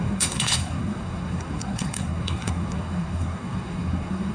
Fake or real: fake